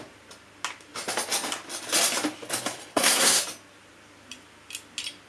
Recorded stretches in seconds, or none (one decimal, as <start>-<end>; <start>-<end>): 0.0-2.9; 3.4-5.3